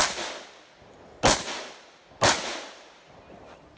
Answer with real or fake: real